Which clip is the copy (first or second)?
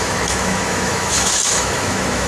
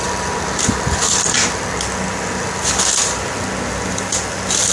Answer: first